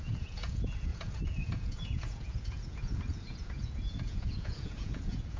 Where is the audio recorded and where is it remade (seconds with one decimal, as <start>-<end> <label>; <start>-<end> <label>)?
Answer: 0.0-5.4 remade